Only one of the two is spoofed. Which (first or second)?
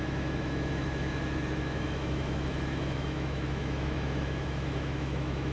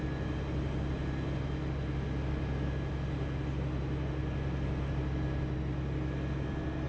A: first